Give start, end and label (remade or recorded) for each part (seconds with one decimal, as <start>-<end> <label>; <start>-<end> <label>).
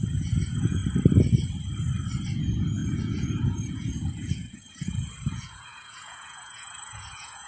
0.0-0.8 remade; 0.8-2.4 recorded; 2.4-7.5 remade